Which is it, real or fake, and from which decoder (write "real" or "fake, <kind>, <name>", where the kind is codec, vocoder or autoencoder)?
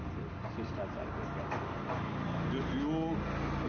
real